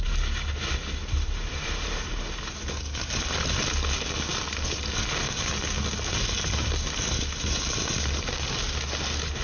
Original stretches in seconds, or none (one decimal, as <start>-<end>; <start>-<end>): 0.0-1.0; 2.0-9.4